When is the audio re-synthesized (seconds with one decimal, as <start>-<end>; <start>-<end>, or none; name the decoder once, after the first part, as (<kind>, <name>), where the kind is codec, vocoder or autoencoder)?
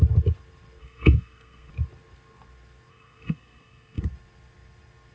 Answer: 0.8-1.7 (codec, SNAC); 2.9-4.0